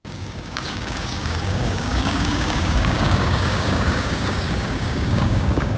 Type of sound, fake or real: fake